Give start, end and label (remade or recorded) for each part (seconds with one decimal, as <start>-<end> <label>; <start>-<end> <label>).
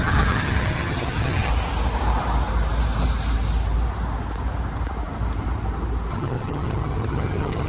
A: 0.0-1.5 remade; 1.5-6.1 recorded; 6.1-7.7 remade